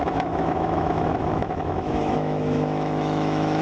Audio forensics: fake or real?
fake